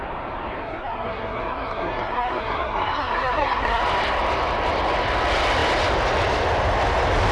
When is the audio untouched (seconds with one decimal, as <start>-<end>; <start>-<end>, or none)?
0.0-0.6; 3.8-7.3

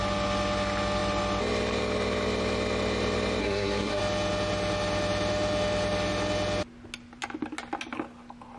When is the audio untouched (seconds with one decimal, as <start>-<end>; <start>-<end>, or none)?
0.0-3.4; 4.0-8.6

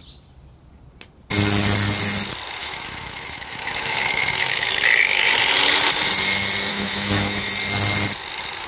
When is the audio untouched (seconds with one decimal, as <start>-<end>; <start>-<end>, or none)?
0.0-2.6; 4.7-6.7; 7.5-8.7

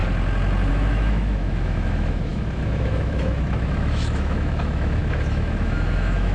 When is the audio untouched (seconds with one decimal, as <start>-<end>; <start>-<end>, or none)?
0.0-0.7